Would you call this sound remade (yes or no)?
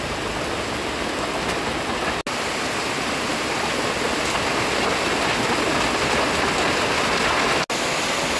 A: no